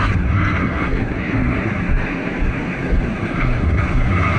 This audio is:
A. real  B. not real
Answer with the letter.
B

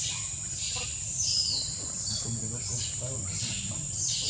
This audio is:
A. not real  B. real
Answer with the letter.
B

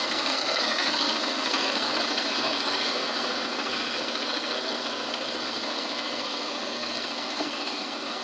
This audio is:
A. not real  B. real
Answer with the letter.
A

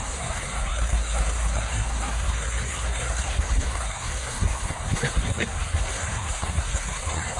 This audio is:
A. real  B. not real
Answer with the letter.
B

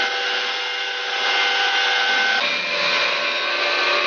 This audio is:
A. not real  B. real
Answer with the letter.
B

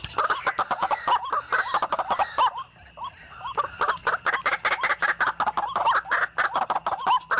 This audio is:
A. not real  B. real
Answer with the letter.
B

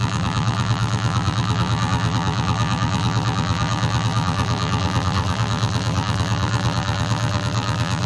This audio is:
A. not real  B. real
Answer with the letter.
A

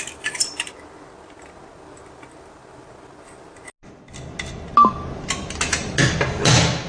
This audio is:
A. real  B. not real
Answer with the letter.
A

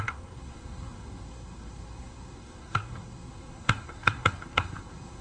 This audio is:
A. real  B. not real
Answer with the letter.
B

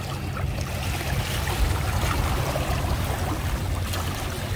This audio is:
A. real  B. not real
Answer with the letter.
A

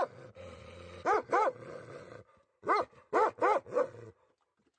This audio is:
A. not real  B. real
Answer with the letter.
B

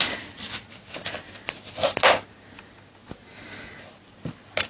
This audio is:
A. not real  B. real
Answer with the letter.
B